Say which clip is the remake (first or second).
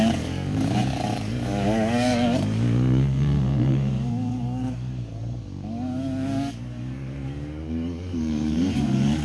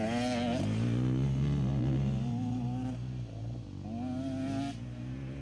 first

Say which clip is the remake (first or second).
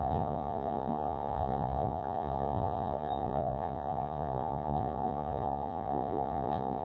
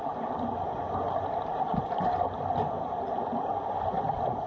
first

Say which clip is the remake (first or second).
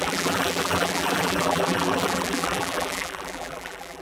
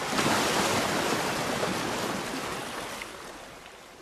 first